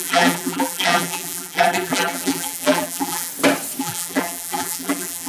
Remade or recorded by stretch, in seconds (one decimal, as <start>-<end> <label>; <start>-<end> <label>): 0.0-3.3 remade; 3.3-3.8 recorded; 3.8-5.3 remade